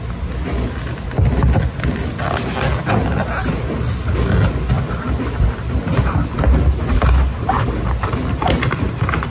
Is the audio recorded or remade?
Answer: recorded